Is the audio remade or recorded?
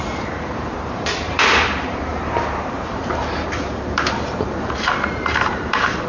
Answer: remade